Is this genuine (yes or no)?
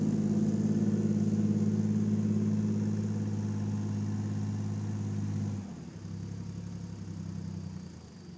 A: yes